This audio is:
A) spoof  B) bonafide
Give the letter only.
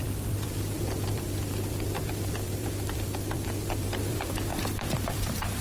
A